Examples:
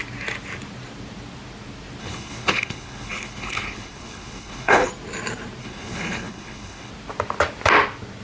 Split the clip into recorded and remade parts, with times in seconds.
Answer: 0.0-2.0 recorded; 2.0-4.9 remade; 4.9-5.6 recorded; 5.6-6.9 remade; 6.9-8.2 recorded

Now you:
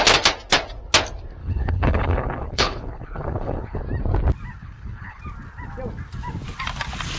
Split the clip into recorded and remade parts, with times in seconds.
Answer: 0.0-1.4 recorded; 1.4-3.8 remade; 3.8-4.6 recorded; 4.6-5.2 remade; 5.2-7.2 recorded

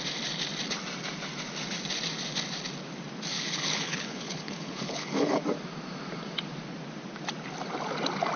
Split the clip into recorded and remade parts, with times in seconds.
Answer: 0.0-3.3 recorded; 3.3-5.4 remade; 5.4-8.4 recorded

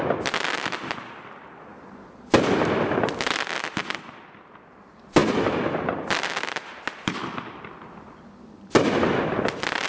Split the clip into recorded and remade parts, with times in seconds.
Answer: 0.0-9.9 recorded